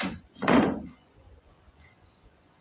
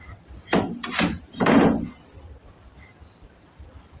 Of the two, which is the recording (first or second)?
second